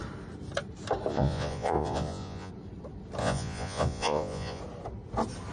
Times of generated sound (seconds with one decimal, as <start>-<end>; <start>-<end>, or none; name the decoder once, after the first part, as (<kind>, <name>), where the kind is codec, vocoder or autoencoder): 1.1-2.5 (vocoder, Vocos); 3.2-4.6